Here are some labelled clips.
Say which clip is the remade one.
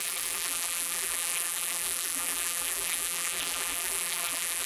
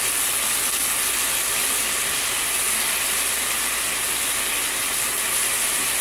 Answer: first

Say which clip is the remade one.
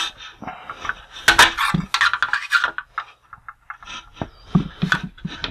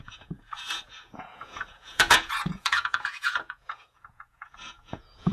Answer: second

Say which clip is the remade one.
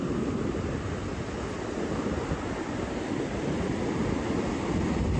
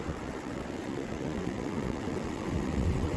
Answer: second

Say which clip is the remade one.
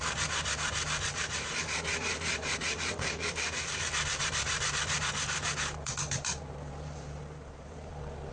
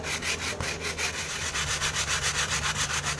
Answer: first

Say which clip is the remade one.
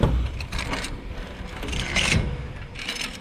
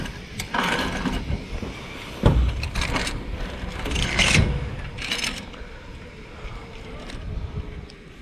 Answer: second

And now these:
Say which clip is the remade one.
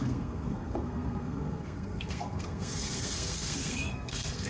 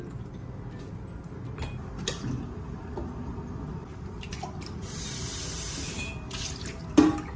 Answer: first